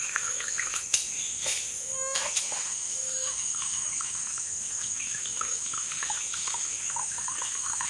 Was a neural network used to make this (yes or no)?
yes